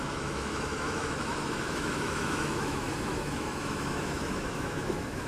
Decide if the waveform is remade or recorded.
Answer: remade